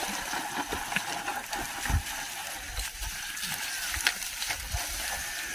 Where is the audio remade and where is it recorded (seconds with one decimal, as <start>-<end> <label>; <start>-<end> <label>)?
0.0-5.5 recorded